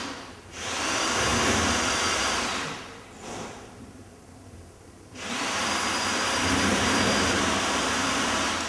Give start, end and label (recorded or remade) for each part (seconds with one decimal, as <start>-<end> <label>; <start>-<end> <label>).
0.0-8.7 remade